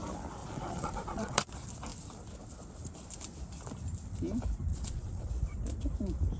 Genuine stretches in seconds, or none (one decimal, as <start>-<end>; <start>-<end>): 0.0-0.4; 1.5-4.7; 5.3-6.4

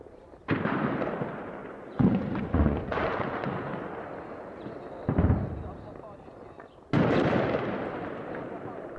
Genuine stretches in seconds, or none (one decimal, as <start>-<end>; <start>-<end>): 0.0-1.6; 3.7-9.0